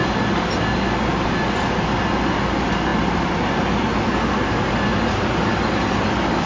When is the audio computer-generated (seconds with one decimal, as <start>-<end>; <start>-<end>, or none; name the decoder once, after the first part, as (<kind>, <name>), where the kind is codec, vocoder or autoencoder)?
none